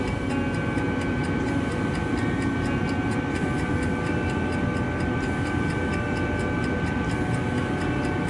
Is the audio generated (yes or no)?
no